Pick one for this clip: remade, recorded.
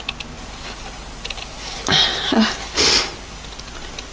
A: recorded